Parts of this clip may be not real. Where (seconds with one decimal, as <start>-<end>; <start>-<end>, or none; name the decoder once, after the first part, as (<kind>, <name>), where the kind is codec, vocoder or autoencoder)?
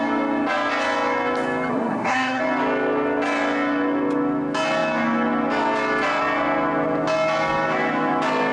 1.7-2.4 (codec, SNAC)